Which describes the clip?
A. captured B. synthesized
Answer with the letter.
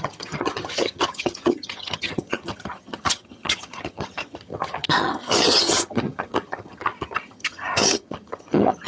B